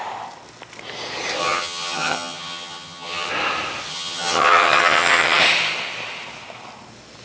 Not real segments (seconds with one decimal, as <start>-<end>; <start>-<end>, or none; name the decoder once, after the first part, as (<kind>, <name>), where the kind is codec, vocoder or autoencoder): 1.4-3.3 (vocoder, HiFi-GAN); 3.9-5.4